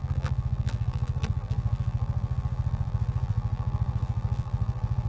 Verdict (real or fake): fake